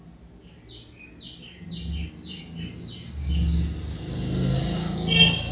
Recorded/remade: recorded